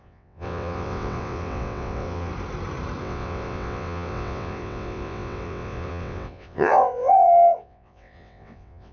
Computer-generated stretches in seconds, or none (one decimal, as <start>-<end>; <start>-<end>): 0.0-2.3; 3.0-8.9